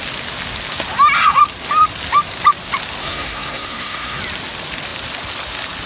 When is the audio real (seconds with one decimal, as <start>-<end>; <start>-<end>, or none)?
0.0-3.0; 4.2-5.9